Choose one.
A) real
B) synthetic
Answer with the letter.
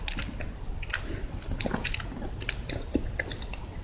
A